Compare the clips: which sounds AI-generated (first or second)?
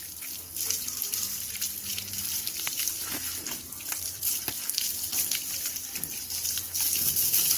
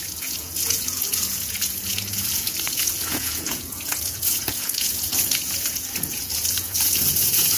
second